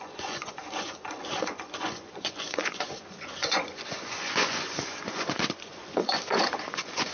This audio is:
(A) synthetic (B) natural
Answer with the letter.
A